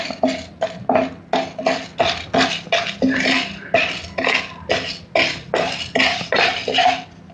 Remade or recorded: recorded